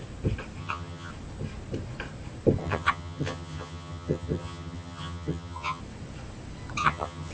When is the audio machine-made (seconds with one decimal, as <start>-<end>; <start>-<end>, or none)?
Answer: 0.6-1.1; 2.6-5.8; 6.8-7.3